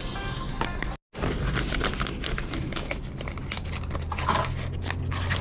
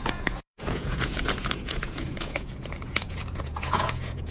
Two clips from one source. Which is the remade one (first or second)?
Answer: second